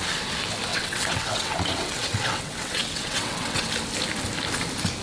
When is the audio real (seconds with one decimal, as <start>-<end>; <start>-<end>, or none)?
0.0-0.7; 3.7-5.0